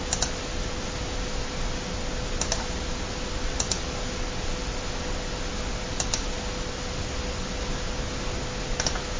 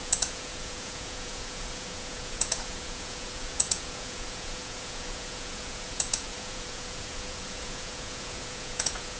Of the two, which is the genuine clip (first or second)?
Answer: first